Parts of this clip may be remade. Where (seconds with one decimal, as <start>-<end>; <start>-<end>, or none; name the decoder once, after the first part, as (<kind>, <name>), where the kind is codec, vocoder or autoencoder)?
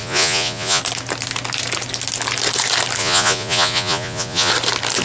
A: 0.0-0.8 (vocoder, Vocos); 3.0-4.5